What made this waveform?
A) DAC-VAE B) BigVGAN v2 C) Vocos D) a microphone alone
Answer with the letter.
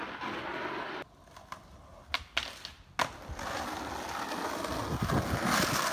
D